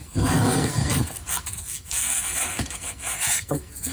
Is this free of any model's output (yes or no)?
no